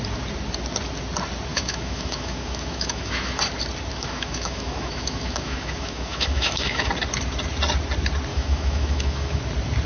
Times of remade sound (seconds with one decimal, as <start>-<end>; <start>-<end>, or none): 1.5-3.4; 3.9-6.9; 8.3-9.4